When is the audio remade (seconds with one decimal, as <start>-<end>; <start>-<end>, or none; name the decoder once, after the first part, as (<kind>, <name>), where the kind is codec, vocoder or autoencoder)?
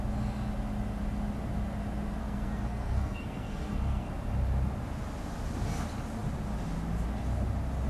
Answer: 2.2-4.1 (codec, SNAC)